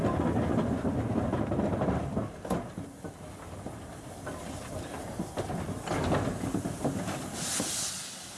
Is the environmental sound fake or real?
real